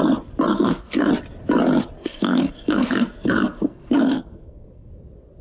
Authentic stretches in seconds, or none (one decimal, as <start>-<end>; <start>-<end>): 0.0-0.5; 1.1-2.0; 4.9-5.4